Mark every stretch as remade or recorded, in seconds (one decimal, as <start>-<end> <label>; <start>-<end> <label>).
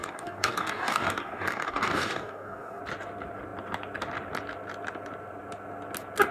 0.0-2.8 remade; 2.8-6.3 recorded